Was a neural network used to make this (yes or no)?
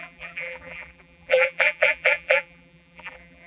yes